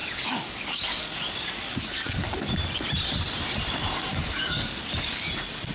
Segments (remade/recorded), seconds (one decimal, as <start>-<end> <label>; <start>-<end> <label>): 0.0-2.5 remade; 2.5-4.1 recorded; 4.1-5.3 remade; 5.3-5.7 recorded